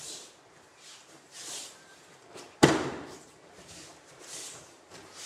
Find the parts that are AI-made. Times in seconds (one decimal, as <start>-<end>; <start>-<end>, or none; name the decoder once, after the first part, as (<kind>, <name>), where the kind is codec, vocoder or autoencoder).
0.7-3.9 (vocoder, BigVGAN v2); 4.4-5.3